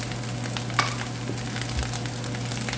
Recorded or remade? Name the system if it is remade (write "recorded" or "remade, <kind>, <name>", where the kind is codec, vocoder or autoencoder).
recorded